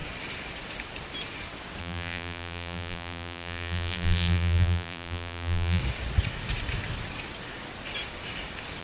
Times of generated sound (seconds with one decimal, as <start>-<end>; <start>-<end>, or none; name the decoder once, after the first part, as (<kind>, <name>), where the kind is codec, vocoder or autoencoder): 1.8-5.8 (vocoder, BigVGAN v2)